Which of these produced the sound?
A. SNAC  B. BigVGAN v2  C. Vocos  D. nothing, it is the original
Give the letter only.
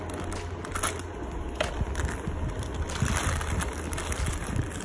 D